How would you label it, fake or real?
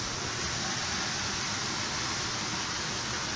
real